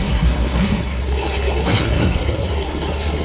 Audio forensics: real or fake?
fake